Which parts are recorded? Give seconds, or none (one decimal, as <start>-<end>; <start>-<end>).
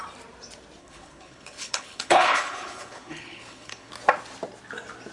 0.0-0.8; 3.9-5.1